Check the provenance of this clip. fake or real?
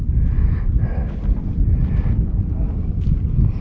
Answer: real